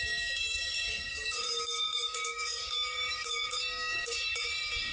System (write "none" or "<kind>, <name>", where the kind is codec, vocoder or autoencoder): codec, DAC